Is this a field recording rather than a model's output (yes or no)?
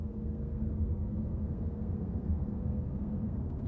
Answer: no